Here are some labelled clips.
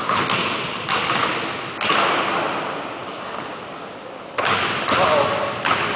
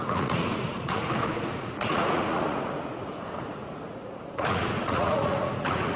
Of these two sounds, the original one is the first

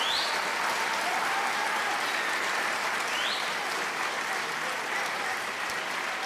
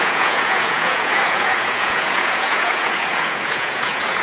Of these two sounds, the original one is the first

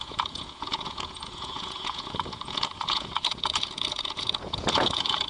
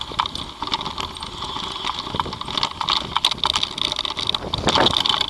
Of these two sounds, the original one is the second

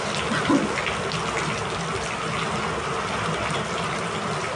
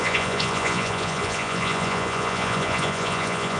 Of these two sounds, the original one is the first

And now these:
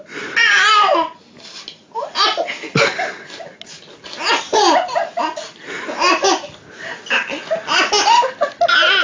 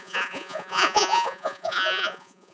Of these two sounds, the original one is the first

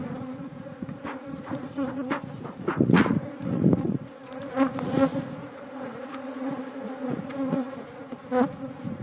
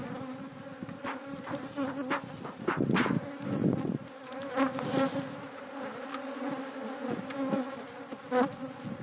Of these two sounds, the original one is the second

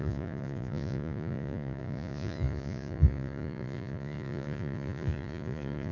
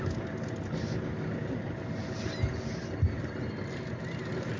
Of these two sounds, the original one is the second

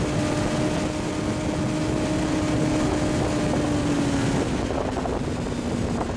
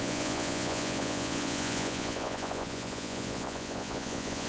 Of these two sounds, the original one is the first